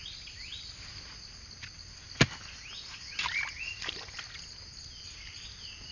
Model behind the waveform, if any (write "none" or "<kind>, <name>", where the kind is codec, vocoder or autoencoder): none